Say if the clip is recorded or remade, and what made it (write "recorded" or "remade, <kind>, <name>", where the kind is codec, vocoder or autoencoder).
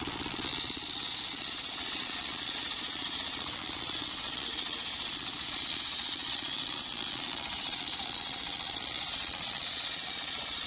remade, vocoder, Vocos